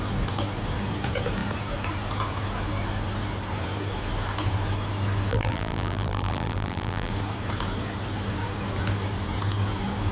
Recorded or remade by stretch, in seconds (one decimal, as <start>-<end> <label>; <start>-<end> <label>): 0.0-5.3 recorded; 5.3-7.1 remade; 7.1-10.1 recorded